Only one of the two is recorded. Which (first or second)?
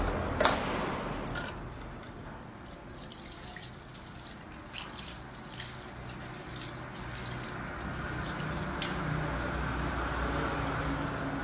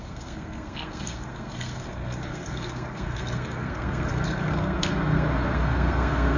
first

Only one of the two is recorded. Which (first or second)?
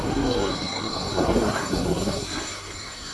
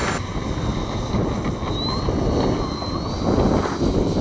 second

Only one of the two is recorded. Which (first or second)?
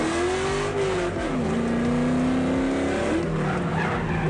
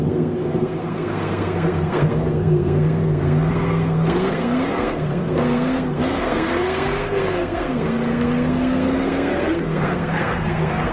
first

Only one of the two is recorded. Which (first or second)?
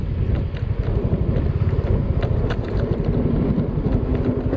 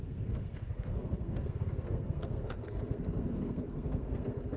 first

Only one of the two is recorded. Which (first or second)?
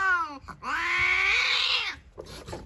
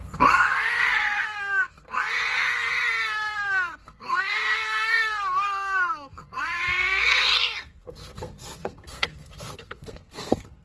first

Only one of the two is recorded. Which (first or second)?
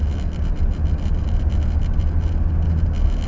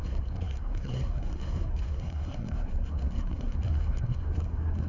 first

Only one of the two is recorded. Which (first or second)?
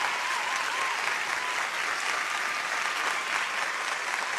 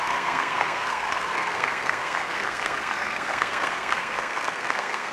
first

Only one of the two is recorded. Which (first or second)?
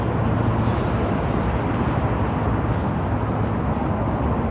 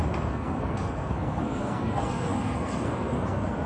first